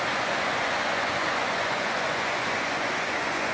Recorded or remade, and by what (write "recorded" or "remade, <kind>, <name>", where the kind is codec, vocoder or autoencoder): remade, vocoder, Vocos